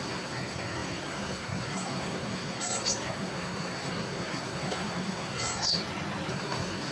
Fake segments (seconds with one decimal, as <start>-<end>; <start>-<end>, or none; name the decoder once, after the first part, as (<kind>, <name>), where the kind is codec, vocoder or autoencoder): 0.0-5.8 (codec, SNAC); 6.3-6.9